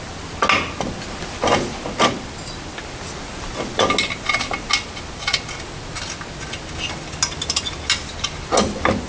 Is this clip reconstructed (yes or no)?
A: no